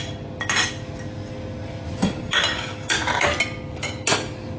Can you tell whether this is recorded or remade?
recorded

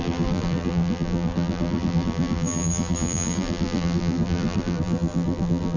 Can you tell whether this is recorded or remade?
remade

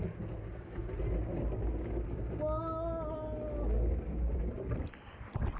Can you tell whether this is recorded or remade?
recorded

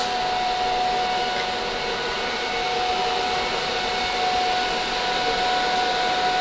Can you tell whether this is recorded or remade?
recorded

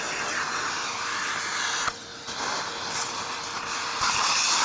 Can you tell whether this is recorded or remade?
recorded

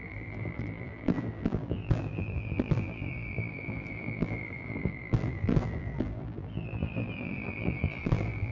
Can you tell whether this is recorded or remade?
remade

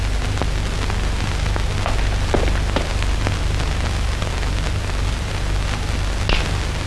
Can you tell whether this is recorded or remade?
recorded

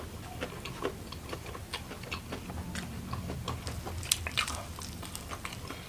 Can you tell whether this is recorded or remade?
recorded